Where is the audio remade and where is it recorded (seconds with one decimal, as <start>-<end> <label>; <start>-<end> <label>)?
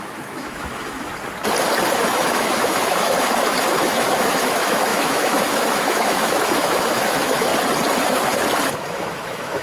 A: 0.0-1.1 remade; 1.1-2.0 recorded; 2.0-7.5 remade; 7.5-8.7 recorded; 8.7-9.6 remade